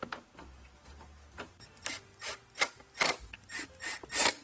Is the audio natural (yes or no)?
yes